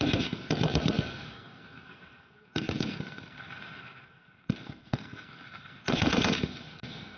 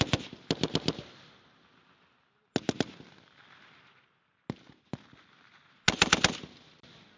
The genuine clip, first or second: second